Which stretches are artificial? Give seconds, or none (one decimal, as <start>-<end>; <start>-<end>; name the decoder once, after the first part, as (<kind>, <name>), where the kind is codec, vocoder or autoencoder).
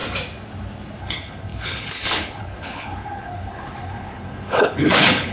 1.0-5.3 (codec, HILCodec)